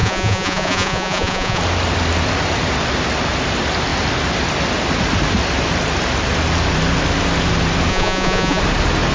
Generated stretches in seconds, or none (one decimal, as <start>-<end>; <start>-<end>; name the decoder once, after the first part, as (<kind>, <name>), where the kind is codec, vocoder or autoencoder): 0.0-1.6 (vocoder, Vocos); 7.9-8.6